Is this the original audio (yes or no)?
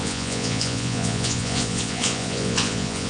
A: no